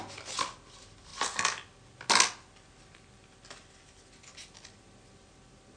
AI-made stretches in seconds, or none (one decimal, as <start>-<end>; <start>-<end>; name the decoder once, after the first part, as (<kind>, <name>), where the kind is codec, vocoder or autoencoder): none